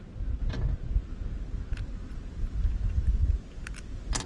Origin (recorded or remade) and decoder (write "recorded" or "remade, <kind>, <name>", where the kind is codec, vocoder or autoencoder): recorded